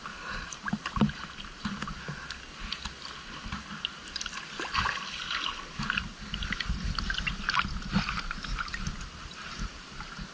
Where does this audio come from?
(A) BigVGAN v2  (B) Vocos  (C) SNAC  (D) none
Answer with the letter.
D